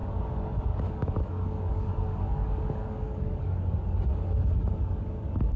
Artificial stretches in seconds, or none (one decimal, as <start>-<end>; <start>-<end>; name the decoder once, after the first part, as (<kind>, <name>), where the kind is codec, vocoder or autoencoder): 0.0-5.6 (codec, DAC)

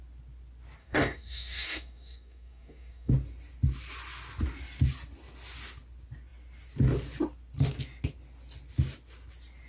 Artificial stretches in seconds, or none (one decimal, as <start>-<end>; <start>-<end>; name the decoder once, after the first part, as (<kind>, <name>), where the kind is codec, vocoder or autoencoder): 0.8-3.1 (codec, DAC)

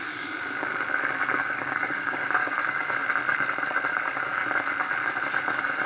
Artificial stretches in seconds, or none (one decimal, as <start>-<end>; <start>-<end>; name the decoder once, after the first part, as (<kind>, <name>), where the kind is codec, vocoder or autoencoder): 0.0-0.7 (codec, DAC); 1.4-3.0; 3.9-4.4; 5.5-5.9

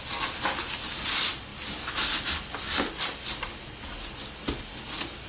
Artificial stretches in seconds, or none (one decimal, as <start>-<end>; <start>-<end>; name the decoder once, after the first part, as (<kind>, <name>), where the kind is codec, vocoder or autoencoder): none